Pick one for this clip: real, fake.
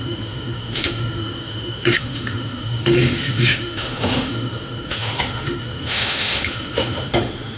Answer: fake